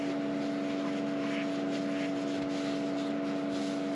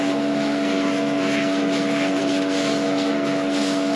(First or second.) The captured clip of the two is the first